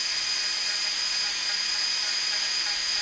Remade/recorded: remade